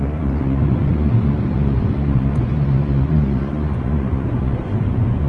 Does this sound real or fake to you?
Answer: fake